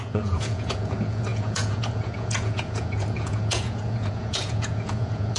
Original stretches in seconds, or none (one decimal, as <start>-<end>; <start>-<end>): none